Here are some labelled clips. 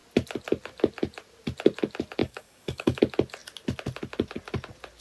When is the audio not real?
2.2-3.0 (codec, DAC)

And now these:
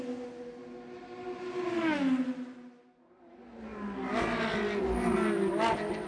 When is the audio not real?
none

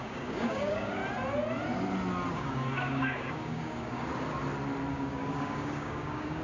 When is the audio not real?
0.0-1.0 (codec, DAC); 2.3-4.1; 4.9-6.4

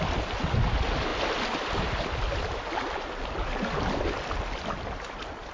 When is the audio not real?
none

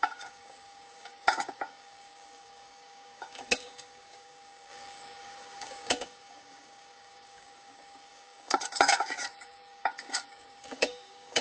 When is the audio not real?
0.0-11.4 (codec, DAC)

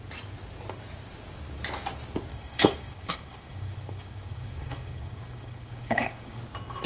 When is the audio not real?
2.3-6.4 (codec, DAC)

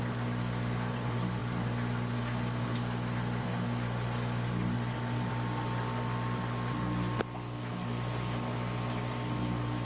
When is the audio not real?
none

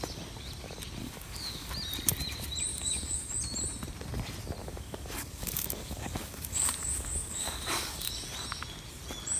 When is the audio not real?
1.0-1.7 (codec, DAC); 2.7-3.3; 4.6-8.1